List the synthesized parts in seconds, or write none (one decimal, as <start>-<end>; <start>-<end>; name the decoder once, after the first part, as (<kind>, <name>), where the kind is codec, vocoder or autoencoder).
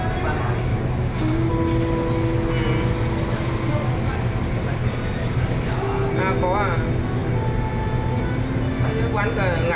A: 0.7-1.5 (codec, DAC)